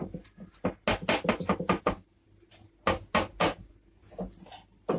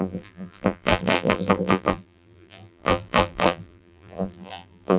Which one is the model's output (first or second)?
second